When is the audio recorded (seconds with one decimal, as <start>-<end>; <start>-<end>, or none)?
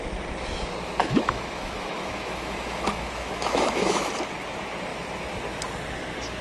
0.0-1.0; 4.1-6.4